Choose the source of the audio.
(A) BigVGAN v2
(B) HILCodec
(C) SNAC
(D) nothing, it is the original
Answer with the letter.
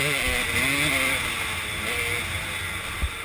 D